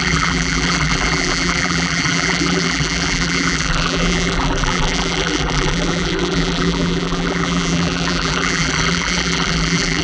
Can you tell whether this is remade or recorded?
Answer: remade